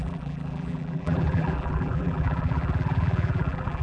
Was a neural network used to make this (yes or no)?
yes